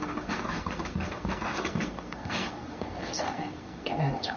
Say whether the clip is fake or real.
fake